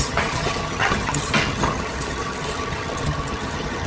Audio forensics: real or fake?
fake